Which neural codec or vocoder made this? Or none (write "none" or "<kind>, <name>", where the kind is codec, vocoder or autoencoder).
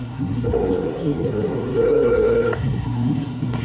codec, SNAC